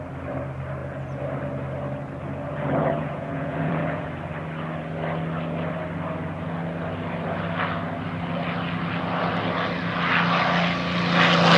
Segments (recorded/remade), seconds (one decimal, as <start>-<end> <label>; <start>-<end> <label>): 0.0-2.8 recorded; 2.8-4.1 remade; 4.1-11.6 recorded